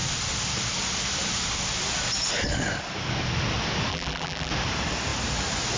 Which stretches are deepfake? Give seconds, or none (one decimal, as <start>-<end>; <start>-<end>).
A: 3.9-4.5